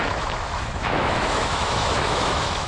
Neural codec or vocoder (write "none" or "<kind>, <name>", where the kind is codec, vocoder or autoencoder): autoencoder, DAC-VAE